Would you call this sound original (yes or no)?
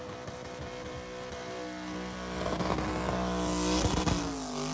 yes